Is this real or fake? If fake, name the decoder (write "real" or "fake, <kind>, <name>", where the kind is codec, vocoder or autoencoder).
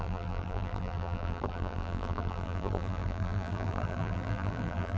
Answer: fake, vocoder, BigVGAN v2